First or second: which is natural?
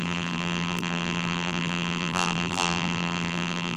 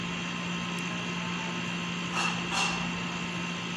second